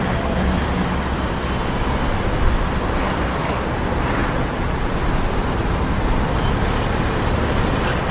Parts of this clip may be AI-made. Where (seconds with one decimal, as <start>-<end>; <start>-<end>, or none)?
4.2-5.0